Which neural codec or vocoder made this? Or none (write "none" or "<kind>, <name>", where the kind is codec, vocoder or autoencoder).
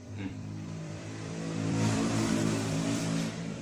vocoder, BigVGAN v2